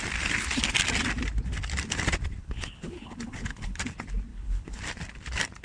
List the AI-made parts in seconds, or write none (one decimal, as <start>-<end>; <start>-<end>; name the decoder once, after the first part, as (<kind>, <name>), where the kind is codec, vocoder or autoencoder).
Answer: 2.4-3.8 (codec, HILCodec); 4.3-4.8